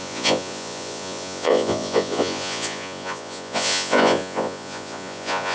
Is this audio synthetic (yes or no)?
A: yes